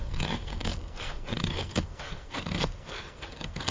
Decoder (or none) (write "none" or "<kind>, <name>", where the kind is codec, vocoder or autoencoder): codec, SNAC